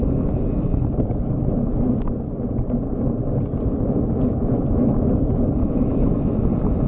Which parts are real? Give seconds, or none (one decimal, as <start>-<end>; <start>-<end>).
0.0-5.6; 6.5-6.9